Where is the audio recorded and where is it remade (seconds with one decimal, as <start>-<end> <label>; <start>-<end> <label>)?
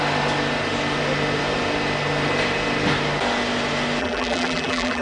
0.0-4.0 recorded; 4.0-5.0 remade